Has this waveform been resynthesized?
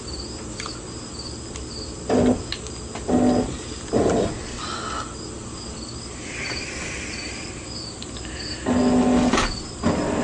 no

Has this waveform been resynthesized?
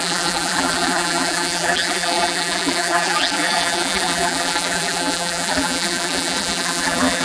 yes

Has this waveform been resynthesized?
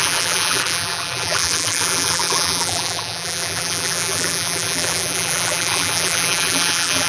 yes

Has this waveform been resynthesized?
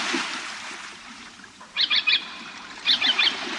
yes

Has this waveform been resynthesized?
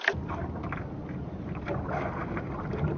no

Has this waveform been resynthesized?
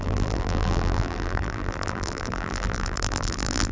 yes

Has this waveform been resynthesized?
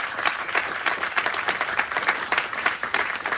yes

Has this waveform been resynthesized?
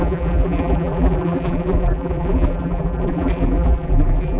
yes